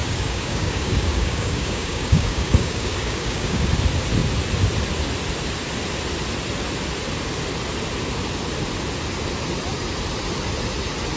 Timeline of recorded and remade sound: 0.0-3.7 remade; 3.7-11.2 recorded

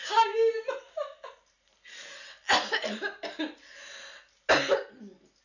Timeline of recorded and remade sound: 0.0-0.5 remade; 0.5-5.4 recorded

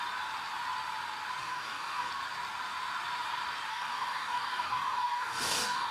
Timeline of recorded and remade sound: 0.0-1.4 recorded; 1.4-2.1 remade; 2.1-3.7 recorded; 3.7-5.9 remade

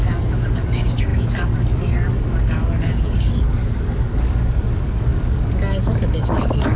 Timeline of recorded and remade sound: 0.0-6.8 remade